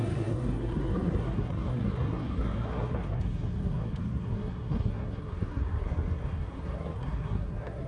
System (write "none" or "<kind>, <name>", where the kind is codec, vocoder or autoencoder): codec, SNAC